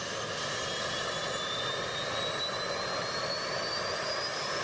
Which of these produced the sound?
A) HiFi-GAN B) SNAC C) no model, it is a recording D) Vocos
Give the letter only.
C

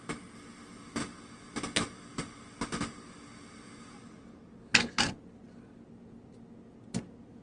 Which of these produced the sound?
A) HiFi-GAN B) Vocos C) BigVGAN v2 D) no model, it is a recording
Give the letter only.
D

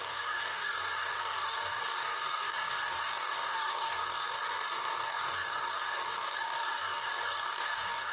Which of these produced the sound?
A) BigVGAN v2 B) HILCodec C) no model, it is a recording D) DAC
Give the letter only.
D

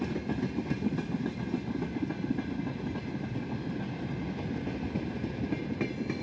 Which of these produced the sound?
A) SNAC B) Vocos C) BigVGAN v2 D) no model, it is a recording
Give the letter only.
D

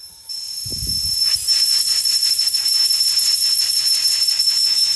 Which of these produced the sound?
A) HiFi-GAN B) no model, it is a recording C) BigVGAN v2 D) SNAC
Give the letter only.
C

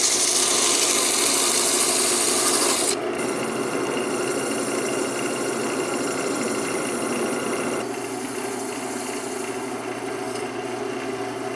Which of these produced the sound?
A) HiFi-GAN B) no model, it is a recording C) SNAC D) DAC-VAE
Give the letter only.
B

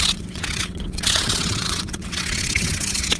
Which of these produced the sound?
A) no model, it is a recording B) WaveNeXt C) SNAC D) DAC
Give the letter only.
B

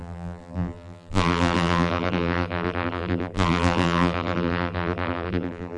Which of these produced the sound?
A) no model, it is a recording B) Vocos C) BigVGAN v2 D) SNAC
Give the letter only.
C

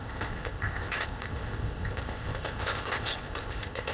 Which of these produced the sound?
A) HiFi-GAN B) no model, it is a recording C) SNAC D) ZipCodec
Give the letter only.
D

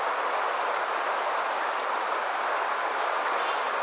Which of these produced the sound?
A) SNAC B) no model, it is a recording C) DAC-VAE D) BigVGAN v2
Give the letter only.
B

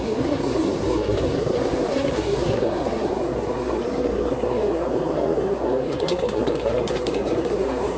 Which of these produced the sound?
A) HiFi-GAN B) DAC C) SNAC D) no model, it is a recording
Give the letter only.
C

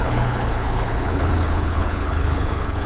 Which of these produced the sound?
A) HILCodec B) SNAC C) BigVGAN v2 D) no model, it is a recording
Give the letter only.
A